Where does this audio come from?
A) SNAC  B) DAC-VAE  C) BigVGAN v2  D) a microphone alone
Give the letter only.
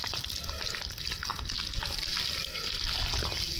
D